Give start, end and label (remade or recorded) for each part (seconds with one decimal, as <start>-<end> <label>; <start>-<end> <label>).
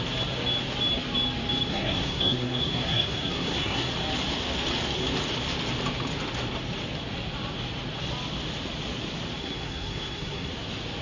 0.0-1.7 recorded; 1.7-3.9 remade; 3.9-9.4 recorded; 9.4-10.5 remade; 10.5-11.0 recorded